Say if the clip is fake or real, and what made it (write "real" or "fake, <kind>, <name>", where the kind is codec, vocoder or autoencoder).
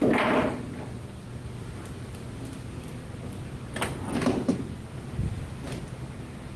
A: real